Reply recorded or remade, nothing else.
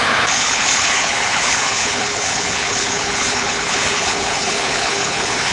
remade